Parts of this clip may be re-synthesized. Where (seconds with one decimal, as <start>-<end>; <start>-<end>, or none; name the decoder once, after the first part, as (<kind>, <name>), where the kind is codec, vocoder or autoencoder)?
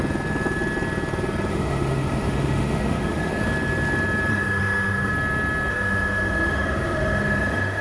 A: 1.5-3.4 (autoencoder, DAC-VAE); 4.3-5.1; 5.7-7.8